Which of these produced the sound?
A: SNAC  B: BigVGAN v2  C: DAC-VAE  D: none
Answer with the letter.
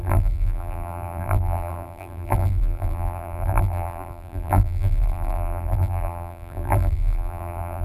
B